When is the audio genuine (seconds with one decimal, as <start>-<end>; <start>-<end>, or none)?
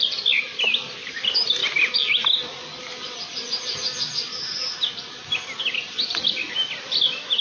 0.0-7.4